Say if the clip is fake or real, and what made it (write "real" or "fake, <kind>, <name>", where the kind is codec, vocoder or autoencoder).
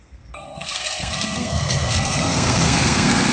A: fake, codec, SNAC